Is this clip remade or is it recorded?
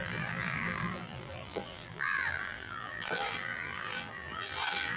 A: remade